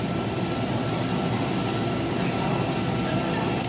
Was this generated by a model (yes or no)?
no